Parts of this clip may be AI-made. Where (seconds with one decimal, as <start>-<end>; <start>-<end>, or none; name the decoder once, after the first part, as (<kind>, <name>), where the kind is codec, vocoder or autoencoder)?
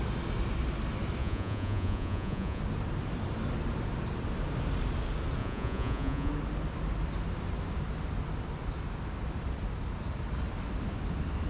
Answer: 1.2-2.6 (vocoder, Vocos); 5.4-6.3